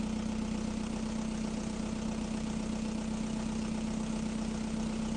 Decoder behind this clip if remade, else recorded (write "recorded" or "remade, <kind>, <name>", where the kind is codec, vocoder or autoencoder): recorded